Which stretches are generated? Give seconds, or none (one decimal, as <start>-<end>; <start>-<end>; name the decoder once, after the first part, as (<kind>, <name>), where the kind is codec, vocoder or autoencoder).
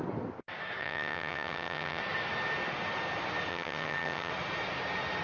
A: 0.8-2.0 (vocoder, HiFi-GAN); 3.5-4.3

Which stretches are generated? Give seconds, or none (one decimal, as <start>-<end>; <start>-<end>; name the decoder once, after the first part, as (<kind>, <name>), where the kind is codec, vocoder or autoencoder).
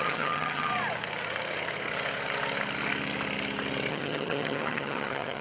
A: 0.0-0.7 (vocoder, HiFi-GAN); 3.9-5.4